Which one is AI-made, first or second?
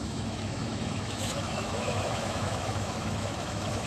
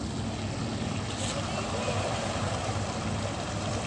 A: first